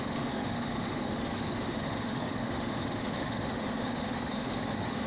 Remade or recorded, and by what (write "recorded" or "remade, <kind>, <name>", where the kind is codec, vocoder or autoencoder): remade, autoencoder, DAC-VAE